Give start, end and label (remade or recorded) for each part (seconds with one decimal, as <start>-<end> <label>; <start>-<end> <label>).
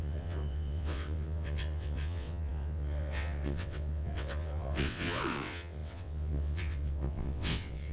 0.0-7.9 remade